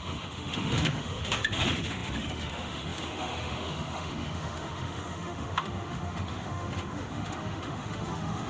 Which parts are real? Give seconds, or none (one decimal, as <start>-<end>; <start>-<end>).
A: none